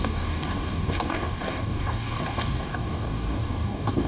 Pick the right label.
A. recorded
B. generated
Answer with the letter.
B